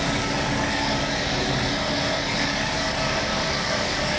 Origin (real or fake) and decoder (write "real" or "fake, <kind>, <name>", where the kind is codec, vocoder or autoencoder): fake, codec, DAC